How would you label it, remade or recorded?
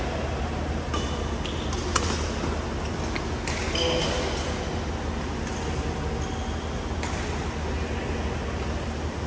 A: recorded